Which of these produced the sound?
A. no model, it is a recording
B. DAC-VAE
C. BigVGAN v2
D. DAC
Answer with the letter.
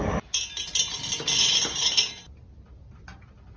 A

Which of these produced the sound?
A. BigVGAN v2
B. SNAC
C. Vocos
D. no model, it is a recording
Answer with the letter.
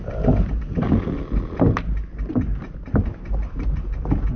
D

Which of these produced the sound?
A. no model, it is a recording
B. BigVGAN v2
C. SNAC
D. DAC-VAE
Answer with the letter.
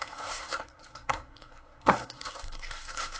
C